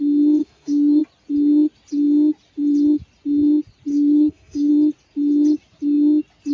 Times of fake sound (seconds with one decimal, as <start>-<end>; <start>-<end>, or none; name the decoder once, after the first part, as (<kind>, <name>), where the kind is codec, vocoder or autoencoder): 0.4-1.0 (codec, SNAC); 3.9-4.7